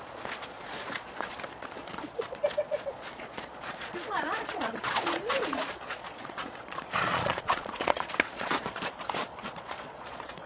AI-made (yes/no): yes